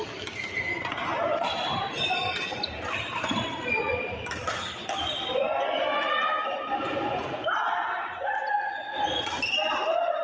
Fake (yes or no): no